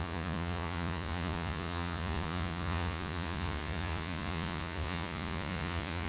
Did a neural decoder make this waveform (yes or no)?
yes